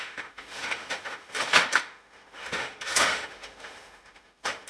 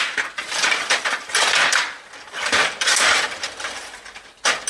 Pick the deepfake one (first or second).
first